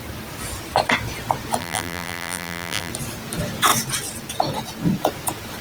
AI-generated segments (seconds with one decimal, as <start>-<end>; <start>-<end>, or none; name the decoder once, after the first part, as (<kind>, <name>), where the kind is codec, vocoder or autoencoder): 1.6-2.9 (vocoder, BigVGAN v2)